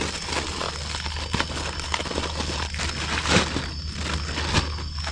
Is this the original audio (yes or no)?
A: yes